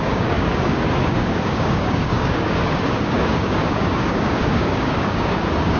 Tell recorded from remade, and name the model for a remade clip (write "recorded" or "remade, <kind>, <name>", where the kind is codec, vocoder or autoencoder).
remade, codec, DAC